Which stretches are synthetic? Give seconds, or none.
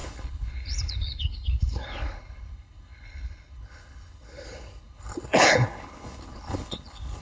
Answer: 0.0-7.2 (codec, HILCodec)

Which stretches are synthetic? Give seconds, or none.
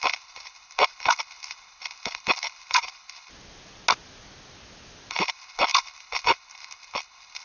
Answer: 0.0-3.3 (codec, HILCodec); 5.1-7.4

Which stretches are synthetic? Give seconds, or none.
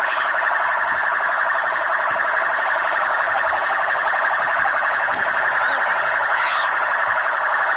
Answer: 0.0-5.5 (codec, HILCodec); 6.0-7.8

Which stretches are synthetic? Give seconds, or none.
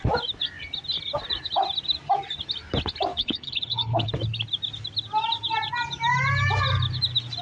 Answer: 3.1-4.1 (codec, HILCodec)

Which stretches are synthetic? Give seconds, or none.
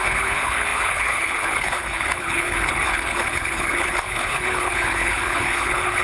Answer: 0.0-6.0 (codec, HILCodec)